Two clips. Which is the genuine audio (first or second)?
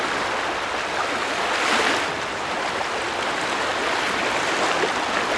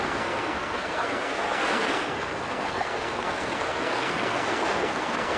first